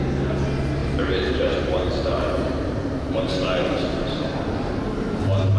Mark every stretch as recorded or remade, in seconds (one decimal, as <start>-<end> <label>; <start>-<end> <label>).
0.0-0.8 recorded; 0.8-3.2 remade; 3.2-3.9 recorded; 3.9-4.4 remade; 4.4-5.6 recorded